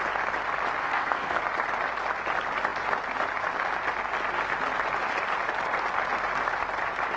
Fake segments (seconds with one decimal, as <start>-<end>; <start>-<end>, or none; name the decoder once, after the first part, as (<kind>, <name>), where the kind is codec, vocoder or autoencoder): 0.8-1.4 (codec, SNAC)